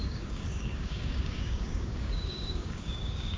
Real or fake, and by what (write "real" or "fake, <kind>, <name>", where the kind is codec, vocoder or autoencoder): fake, codec, DAC